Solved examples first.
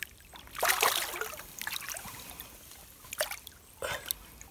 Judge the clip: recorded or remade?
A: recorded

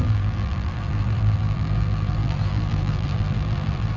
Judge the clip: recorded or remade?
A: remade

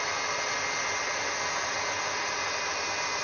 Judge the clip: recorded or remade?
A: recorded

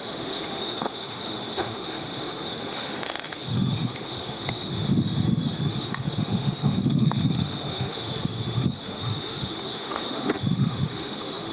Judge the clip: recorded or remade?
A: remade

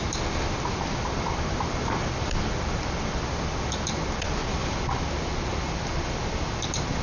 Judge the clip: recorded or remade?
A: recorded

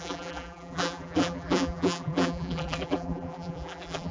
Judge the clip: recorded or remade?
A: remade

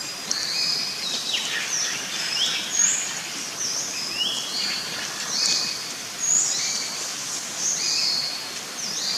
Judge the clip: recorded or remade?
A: recorded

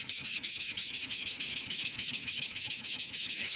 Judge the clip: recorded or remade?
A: remade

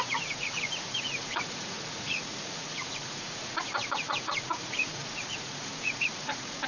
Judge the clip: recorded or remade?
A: remade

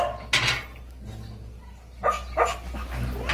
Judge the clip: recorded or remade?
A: recorded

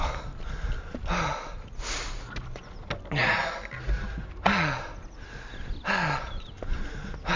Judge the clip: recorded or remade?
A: recorded